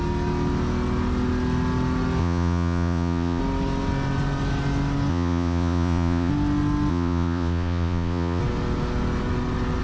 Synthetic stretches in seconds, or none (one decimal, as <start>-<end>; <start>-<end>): 2.2-3.4; 5.1-6.3; 6.9-8.4